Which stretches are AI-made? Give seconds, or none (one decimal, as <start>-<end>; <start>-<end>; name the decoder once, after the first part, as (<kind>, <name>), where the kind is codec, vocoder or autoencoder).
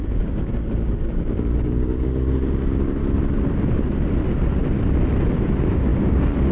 0.0-3.0 (codec, DAC); 5.4-6.5